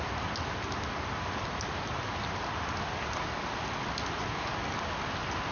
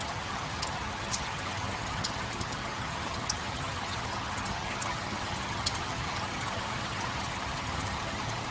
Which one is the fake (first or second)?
second